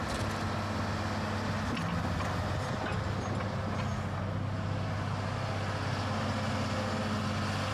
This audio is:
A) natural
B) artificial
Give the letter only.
A